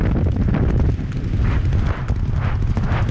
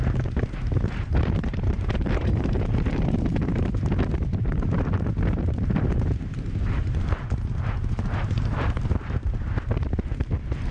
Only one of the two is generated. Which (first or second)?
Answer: second